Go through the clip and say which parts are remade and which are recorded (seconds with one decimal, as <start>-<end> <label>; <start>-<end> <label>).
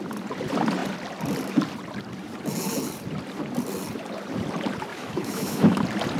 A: 0.0-4.9 recorded; 4.9-5.8 remade; 5.8-6.2 recorded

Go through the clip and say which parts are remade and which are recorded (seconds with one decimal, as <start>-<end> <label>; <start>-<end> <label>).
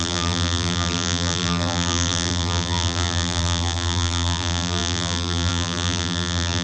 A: 0.0-6.6 remade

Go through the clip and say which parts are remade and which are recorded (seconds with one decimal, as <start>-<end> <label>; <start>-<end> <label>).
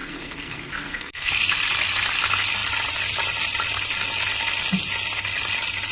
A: 0.0-1.3 remade; 1.3-5.9 recorded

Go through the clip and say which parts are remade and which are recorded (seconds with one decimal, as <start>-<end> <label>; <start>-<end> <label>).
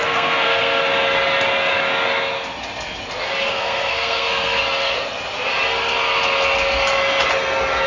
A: 0.0-0.8 remade; 0.8-3.4 recorded; 3.4-4.6 remade; 4.6-7.9 recorded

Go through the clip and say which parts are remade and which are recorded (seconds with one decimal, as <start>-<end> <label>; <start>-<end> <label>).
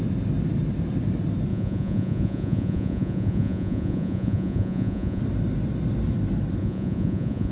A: 0.0-1.5 recorded; 1.5-5.2 remade; 5.2-6.6 recorded; 6.6-7.5 remade